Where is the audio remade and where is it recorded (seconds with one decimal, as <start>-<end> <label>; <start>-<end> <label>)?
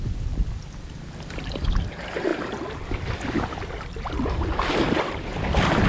0.0-5.9 remade